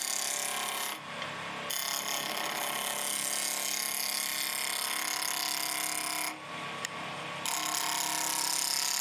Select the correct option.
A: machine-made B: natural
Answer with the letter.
B